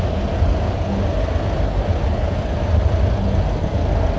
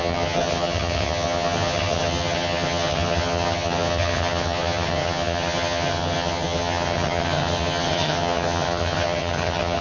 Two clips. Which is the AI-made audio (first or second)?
second